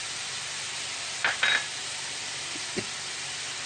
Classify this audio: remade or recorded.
recorded